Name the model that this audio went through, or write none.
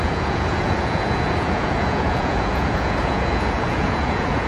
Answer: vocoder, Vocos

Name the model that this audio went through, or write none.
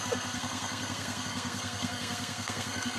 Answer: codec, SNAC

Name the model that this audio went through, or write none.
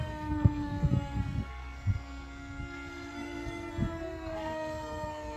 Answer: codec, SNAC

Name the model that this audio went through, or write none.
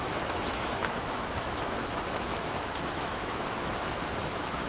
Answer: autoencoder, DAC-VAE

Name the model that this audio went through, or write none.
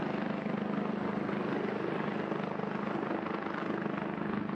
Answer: none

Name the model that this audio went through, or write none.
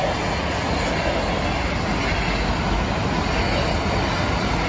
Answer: none